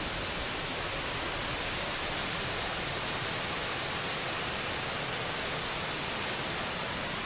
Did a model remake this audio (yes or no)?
no